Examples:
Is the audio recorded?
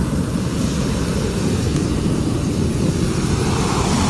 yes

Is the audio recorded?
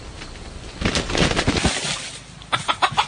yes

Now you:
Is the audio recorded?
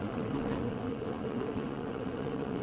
no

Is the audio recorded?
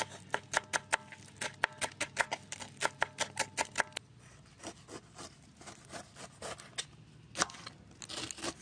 yes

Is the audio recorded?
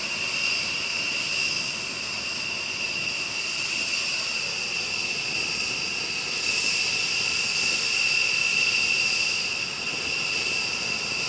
yes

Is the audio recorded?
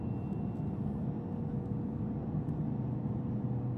yes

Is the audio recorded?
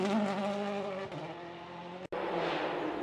yes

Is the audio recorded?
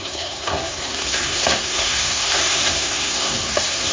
no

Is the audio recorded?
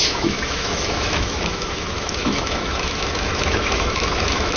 no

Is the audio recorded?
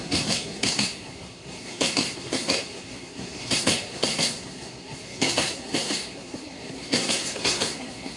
no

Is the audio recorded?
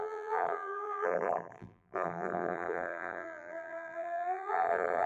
no